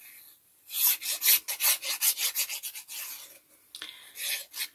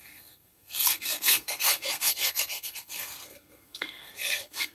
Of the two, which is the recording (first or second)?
first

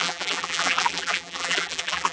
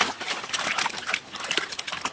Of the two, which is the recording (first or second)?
second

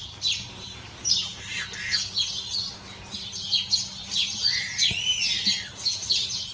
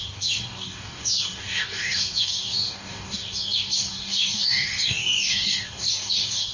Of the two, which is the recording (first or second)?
first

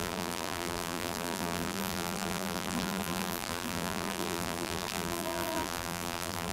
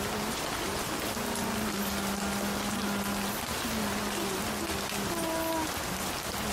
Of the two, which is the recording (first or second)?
second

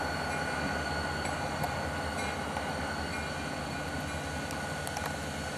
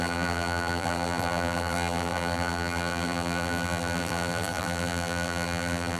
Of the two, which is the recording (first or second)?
first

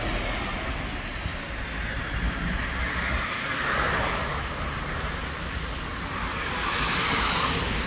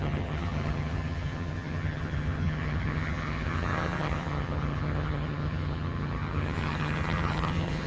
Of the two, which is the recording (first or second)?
first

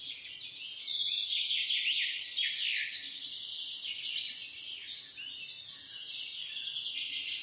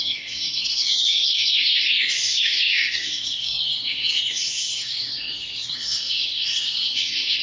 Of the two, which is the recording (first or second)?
first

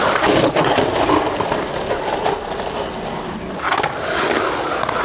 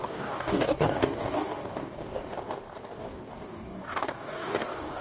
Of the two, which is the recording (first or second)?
first